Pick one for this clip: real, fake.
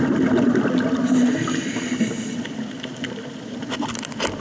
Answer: real